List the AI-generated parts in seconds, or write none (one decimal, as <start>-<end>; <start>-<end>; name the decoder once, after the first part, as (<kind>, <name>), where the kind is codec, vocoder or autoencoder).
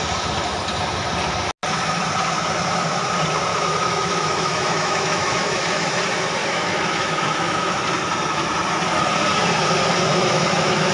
3.5-6.0 (autoencoder, DAC-VAE); 6.4-7.8; 10.1-10.9